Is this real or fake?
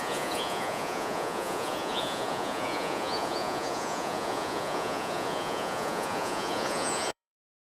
fake